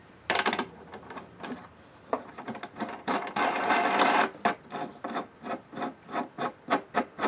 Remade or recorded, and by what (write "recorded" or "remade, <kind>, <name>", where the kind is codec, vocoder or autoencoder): remade, vocoder, BigVGAN v2